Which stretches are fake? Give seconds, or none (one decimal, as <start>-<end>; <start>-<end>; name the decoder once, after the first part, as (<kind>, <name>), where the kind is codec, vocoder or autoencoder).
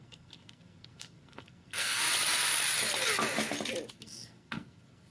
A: 0.0-2.0 (codec, SNAC); 3.9-5.1